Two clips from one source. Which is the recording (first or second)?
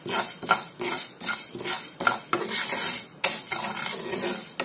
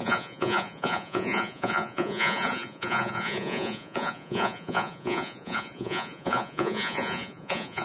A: first